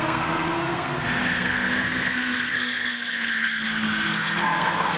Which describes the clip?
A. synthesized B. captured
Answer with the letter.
A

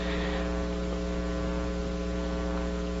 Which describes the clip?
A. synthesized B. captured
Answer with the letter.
B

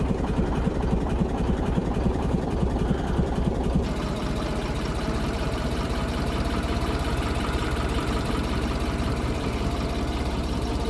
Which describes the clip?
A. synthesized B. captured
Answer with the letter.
A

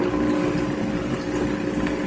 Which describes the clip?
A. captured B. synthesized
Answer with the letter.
A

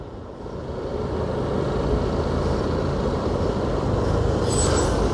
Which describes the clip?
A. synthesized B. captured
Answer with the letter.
B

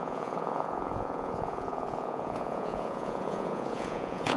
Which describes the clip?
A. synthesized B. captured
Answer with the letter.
A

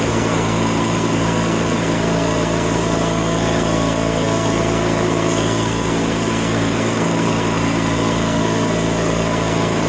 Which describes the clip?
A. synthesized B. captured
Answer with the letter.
A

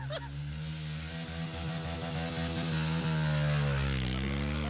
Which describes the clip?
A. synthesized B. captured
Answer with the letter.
B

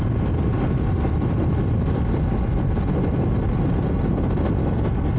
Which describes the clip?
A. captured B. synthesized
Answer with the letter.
A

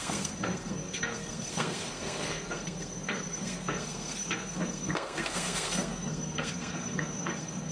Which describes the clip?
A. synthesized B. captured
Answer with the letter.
A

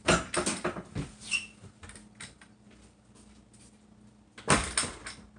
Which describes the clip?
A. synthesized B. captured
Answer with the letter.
B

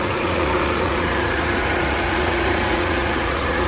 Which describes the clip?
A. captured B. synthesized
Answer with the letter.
B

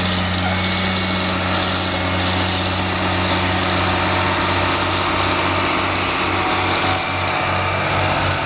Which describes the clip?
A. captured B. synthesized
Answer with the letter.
A